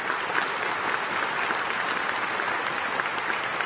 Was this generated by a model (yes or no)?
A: no